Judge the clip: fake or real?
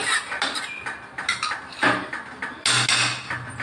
real